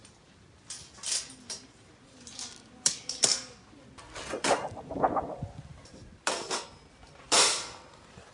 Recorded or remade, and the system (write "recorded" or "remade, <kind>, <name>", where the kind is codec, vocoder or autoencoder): remade, vocoder, BigVGAN v2